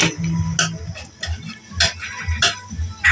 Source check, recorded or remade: recorded